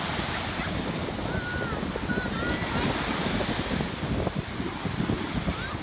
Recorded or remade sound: recorded